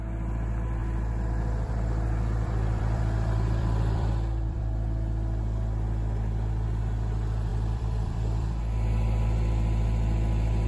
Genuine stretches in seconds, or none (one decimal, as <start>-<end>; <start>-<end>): 0.0-0.8; 4.6-7.5; 8.6-10.7